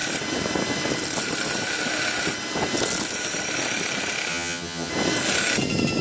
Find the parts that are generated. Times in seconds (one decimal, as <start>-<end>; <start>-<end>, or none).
4.3-4.9